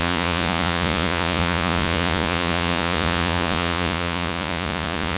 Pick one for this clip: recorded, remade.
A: remade